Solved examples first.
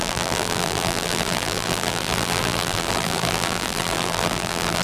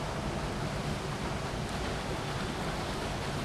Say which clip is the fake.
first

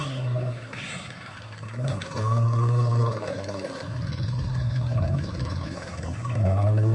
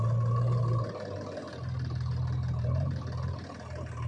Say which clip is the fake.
first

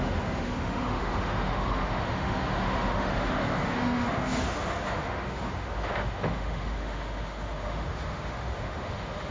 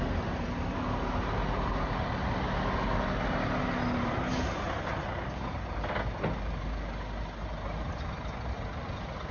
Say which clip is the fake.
first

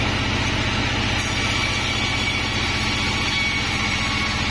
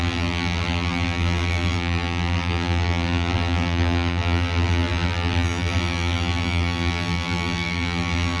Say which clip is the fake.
second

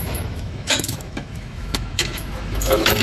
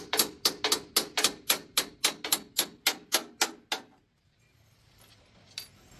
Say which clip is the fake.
first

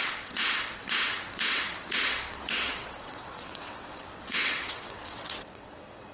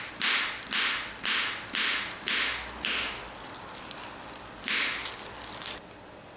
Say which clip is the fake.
first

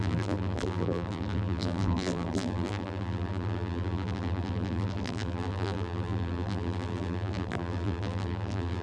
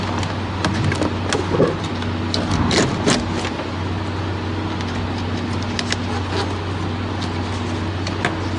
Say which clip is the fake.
first